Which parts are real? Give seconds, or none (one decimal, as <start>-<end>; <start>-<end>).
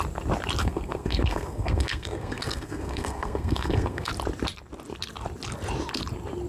0.0-0.6; 4.1-6.5